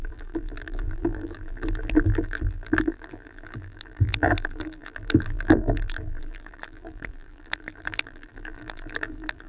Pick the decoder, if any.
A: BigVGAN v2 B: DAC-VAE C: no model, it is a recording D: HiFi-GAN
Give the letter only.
A